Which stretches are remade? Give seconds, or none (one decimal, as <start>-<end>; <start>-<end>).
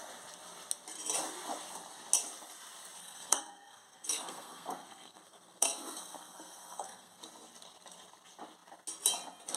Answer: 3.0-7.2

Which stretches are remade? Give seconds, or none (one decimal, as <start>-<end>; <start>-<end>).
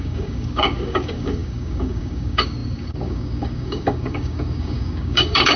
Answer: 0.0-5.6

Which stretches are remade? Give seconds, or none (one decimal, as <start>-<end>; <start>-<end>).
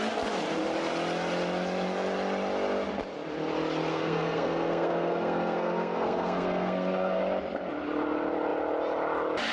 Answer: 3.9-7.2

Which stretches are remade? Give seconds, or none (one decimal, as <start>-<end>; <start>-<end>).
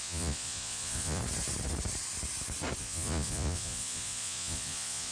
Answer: 0.0-1.2; 2.8-5.1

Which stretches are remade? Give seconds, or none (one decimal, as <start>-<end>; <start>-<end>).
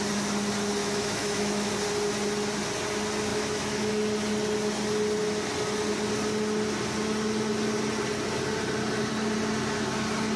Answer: 0.8-1.7; 3.3-3.9